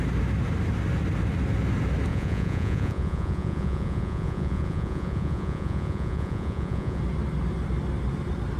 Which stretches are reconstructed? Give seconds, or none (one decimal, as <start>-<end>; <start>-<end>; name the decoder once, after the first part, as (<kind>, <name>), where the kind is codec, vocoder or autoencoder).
2.1-7.0 (vocoder, Vocos)